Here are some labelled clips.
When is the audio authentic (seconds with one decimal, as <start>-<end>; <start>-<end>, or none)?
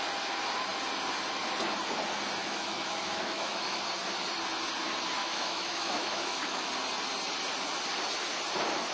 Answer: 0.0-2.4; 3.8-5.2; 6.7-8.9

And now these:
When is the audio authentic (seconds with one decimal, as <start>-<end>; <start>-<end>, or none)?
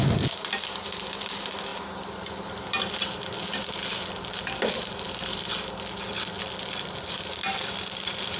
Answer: 0.0-8.4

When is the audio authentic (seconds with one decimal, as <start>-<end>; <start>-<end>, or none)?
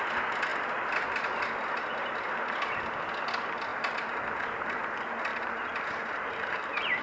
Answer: 0.0-3.7; 4.8-5.3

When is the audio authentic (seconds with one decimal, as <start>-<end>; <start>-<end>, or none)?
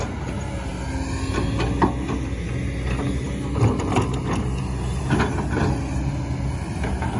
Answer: 0.0-7.2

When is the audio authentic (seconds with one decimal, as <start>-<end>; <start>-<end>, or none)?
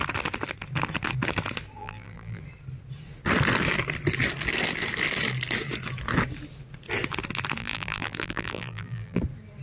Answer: 0.0-1.8; 2.4-7.6; 9.2-9.6